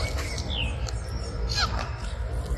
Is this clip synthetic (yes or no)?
no